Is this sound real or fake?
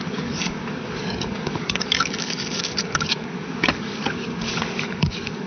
fake